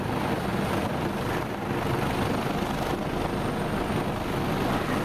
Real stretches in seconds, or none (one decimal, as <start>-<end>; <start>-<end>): 0.0-5.0

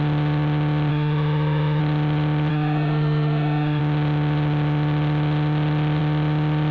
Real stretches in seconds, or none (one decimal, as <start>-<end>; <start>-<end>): 0.0-0.9; 1.8-2.5; 3.8-6.7

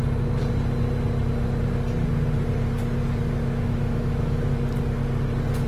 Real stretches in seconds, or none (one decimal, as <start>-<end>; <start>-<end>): 0.0-3.4; 4.5-5.7

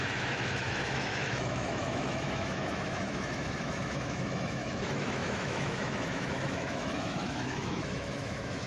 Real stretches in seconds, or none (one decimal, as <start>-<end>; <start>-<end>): none

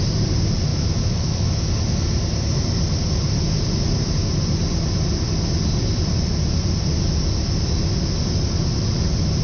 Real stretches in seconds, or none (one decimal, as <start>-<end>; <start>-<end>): 0.0-0.7; 1.7-9.4